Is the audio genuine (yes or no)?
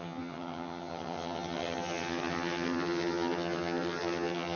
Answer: no